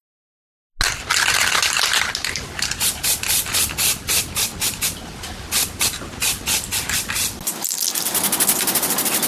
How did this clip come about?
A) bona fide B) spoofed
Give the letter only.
A